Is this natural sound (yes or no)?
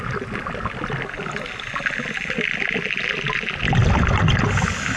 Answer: yes